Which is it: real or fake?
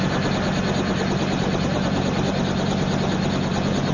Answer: real